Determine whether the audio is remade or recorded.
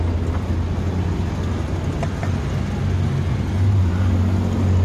recorded